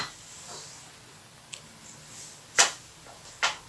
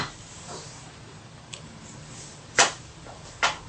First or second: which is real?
first